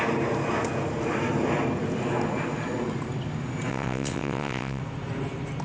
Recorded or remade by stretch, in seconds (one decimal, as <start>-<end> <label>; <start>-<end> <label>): 0.0-3.7 recorded; 3.7-4.8 remade; 4.8-5.6 recorded